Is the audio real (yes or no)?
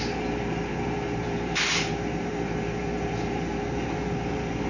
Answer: no